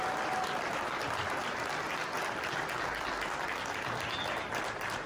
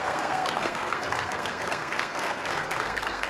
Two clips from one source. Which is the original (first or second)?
first